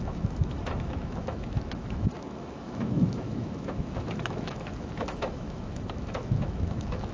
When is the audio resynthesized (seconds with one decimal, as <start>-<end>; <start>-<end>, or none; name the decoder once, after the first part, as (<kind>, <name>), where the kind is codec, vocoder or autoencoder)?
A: 0.0-7.1 (autoencoder, DAC-VAE)